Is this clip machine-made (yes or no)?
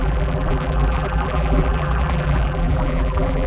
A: yes